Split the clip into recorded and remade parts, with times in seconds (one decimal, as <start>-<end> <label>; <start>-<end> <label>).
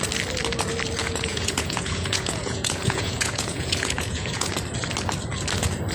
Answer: 0.0-1.0 recorded; 1.0-4.5 remade; 4.5-5.9 recorded